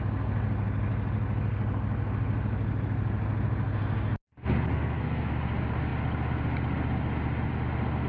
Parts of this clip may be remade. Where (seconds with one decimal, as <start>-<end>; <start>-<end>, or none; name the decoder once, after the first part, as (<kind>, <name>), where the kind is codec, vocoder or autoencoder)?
4.7-5.3 (codec, SNAC)